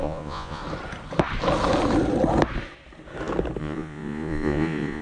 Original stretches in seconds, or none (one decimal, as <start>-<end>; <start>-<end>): 0.6-3.6